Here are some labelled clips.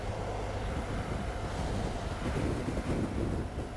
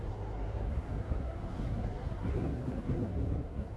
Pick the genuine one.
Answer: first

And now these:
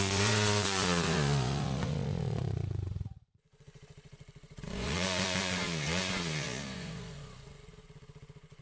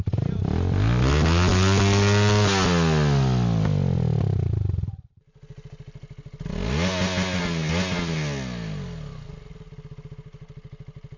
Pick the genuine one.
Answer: second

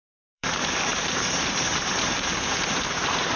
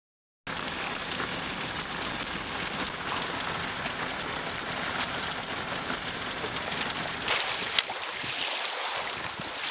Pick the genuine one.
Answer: second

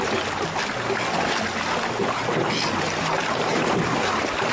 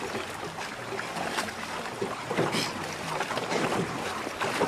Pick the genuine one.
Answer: first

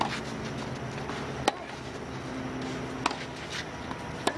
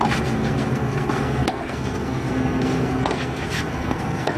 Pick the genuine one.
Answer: first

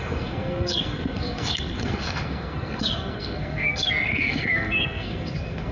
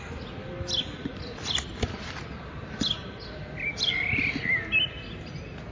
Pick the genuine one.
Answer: second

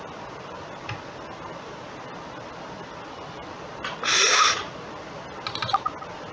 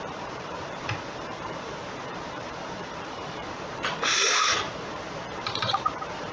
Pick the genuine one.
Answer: first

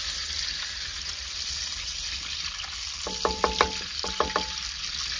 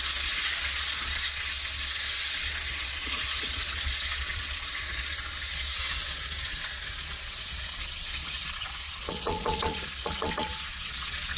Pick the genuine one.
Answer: first